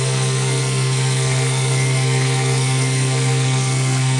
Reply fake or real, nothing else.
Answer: fake